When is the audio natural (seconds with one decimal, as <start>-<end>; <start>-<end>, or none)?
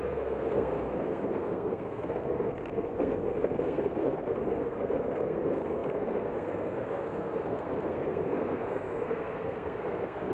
none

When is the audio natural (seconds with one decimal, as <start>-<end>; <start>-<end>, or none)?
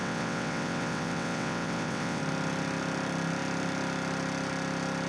2.2-5.1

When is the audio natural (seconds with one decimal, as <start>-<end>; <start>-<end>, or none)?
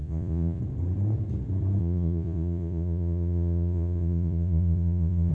0.6-1.8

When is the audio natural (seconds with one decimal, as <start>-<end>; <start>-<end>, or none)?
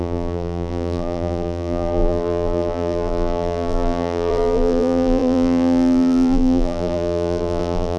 none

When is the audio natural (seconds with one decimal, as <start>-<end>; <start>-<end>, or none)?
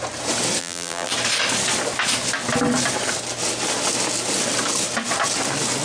0.0-0.6; 1.1-5.8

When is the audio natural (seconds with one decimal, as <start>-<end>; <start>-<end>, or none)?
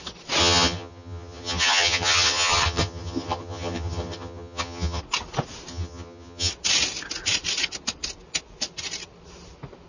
0.0-0.4; 5.0-5.7; 6.5-9.9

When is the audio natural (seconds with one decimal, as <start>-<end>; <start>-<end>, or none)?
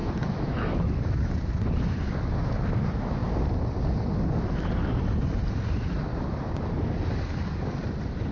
1.3-8.3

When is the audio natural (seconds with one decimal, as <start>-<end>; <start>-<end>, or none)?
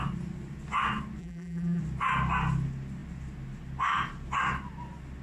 0.0-1.2; 1.8-5.2